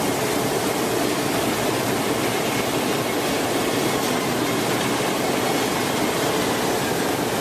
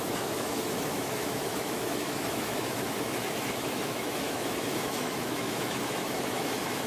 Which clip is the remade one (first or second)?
second